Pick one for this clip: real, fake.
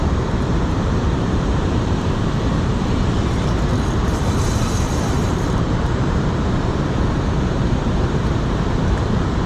fake